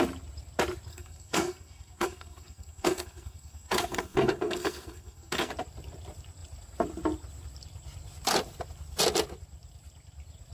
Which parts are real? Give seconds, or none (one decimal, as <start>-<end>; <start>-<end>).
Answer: 0.0-0.9; 5.5-10.5